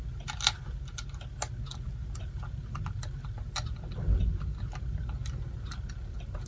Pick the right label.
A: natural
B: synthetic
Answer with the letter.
A